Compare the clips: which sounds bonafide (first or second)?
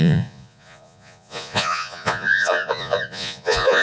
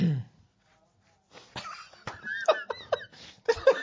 second